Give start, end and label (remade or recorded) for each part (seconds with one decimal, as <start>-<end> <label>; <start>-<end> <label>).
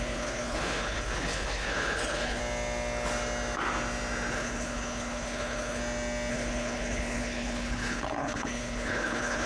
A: 0.0-2.4 remade; 2.4-4.3 recorded; 4.3-5.8 remade; 5.8-6.3 recorded; 6.3-9.5 remade